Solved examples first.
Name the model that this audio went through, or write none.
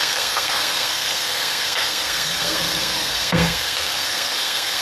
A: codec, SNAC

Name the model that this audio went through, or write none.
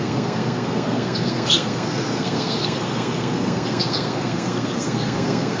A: codec, SNAC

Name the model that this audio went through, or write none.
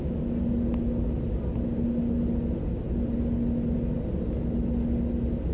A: none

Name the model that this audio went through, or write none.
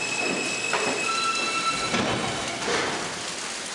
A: none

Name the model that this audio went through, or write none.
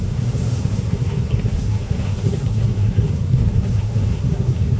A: codec, SNAC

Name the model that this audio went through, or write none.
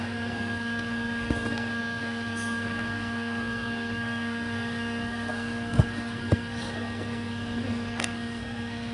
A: codec, SNAC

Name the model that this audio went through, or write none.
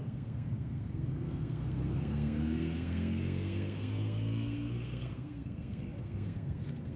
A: codec, SNAC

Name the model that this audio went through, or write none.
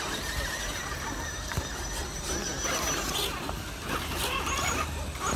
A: none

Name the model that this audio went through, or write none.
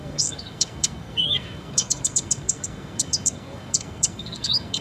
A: codec, SNAC